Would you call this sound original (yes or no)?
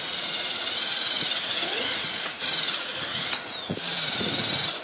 no